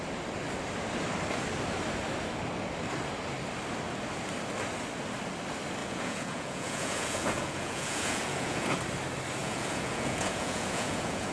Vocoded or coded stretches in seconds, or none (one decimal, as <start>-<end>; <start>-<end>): 5.8-8.8; 9.4-11.3